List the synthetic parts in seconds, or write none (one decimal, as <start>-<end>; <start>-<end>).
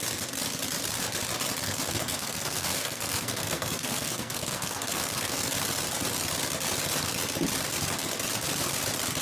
1.6-5.5